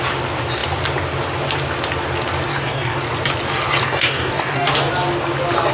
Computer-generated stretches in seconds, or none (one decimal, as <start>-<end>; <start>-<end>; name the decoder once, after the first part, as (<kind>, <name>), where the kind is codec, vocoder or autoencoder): 2.5-3.0 (codec, DAC); 3.8-4.9